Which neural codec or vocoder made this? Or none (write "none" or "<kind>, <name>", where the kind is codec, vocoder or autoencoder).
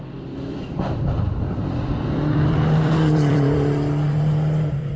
vocoder, BigVGAN v2